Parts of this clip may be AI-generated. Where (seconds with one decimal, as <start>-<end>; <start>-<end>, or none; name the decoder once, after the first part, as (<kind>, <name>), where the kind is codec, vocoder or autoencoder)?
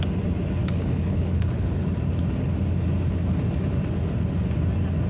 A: 0.6-2.0 (codec, HILCodec)